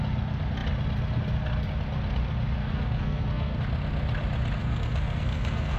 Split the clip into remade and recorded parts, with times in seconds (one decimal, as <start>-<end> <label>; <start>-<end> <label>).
0.0-2.6 recorded; 2.6-3.6 remade; 3.6-4.6 recorded; 4.6-5.8 remade